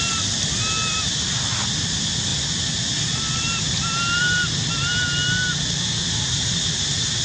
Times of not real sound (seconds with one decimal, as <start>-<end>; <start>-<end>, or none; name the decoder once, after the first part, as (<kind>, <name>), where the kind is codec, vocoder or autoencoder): none